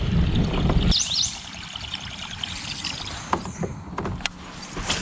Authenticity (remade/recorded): recorded